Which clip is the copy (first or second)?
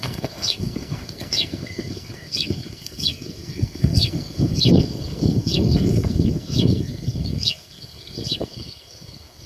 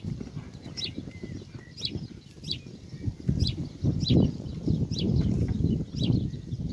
first